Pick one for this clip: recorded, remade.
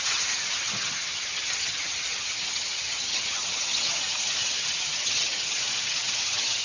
remade